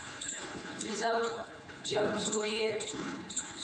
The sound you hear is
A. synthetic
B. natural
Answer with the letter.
A